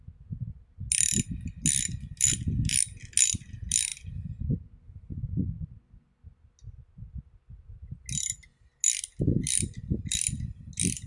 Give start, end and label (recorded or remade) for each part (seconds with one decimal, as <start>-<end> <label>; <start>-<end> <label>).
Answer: 0.0-11.1 recorded